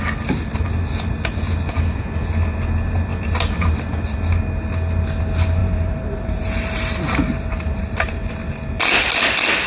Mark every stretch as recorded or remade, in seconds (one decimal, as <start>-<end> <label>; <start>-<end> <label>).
0.0-5.6 recorded; 5.6-8.3 remade; 8.3-9.7 recorded